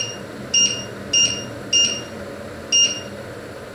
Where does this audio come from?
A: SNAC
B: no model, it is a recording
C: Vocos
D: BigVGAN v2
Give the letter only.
B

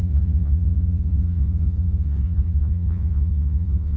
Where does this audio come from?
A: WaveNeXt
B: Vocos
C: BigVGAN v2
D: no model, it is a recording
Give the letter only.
B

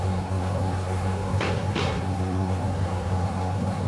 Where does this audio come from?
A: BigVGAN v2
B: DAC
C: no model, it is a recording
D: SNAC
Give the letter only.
D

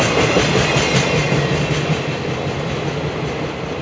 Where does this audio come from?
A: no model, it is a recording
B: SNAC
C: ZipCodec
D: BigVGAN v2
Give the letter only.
A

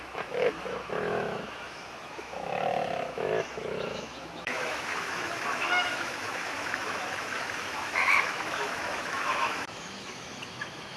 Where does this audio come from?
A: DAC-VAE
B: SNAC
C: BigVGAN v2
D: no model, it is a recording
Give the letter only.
A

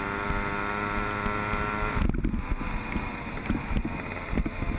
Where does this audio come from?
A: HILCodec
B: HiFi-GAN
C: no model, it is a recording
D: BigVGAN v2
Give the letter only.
C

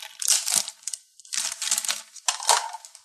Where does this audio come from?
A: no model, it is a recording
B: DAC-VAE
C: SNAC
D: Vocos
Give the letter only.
A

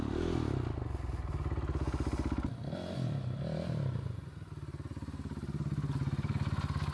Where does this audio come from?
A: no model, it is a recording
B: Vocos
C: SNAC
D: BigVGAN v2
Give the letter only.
A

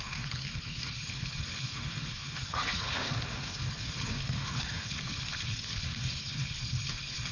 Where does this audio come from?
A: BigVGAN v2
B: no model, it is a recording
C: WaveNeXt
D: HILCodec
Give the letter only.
D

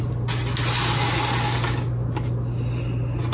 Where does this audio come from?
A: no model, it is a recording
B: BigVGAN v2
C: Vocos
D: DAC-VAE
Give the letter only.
A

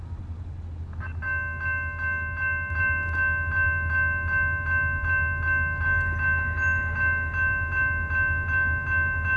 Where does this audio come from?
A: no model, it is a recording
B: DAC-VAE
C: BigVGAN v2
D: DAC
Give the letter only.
A